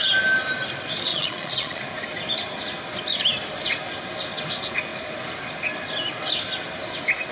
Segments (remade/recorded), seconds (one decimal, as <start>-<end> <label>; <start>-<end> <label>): 0.0-1.1 recorded; 1.1-1.8 remade; 1.8-7.3 recorded